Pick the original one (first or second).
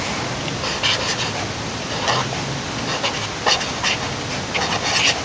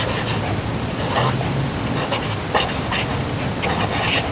first